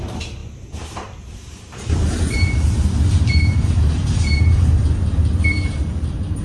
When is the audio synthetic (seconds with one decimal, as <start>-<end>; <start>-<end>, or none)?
0.0-4.8; 5.5-6.4